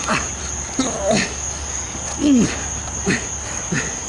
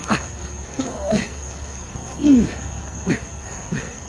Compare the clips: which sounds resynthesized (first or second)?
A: second